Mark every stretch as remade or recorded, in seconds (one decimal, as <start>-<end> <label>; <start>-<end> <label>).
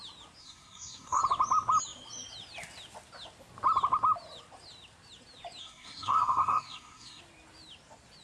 0.0-0.4 recorded; 0.4-1.2 remade; 1.2-5.6 recorded; 5.6-7.2 remade; 7.2-8.2 recorded